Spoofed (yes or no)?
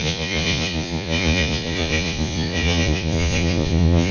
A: yes